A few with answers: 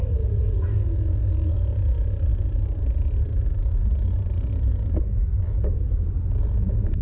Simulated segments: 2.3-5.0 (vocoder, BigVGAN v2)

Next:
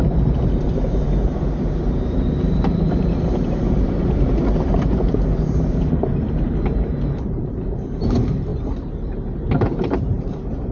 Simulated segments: 0.0-8.5 (vocoder, BigVGAN v2); 9.5-10.7

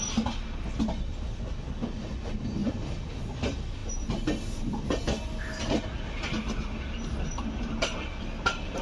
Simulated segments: 2.6-3.2 (vocoder, BigVGAN v2)

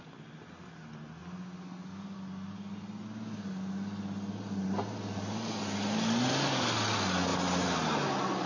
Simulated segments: none